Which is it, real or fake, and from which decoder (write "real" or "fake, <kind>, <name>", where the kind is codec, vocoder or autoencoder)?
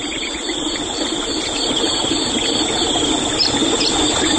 real